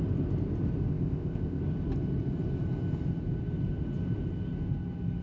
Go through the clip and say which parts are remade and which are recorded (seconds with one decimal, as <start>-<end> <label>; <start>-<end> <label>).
0.0-0.9 recorded; 0.9-1.6 remade; 1.6-5.2 recorded